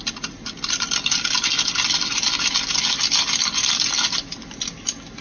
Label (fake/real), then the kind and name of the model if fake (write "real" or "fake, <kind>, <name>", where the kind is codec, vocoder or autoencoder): real